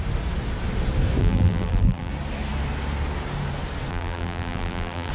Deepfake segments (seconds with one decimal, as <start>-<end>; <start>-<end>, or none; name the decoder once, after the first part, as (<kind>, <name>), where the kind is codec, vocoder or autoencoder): 1.2-2.1 (vocoder, BigVGAN v2); 3.9-5.1